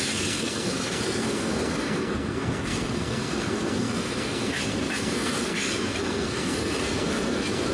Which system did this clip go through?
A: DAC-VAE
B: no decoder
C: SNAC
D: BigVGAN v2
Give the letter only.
C